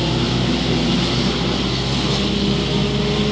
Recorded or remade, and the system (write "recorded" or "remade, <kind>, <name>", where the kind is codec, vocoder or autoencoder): recorded